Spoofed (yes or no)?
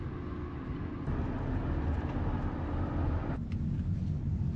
no